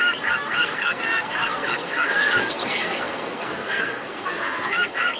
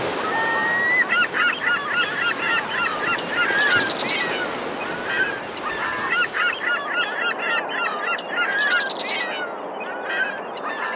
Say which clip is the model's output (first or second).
first